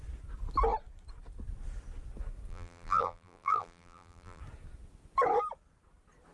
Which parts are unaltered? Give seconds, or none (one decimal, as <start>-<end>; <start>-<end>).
0.0-2.5; 4.4-6.3